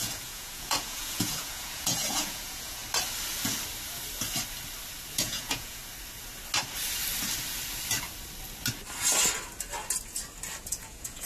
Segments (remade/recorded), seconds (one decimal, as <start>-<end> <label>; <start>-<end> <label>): 0.0-2.8 remade; 2.8-5.1 recorded; 5.1-5.8 remade; 5.8-10.6 recorded; 10.6-11.3 remade